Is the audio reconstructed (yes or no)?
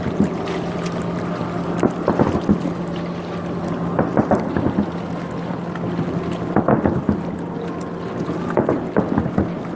no